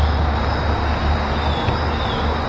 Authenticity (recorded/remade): recorded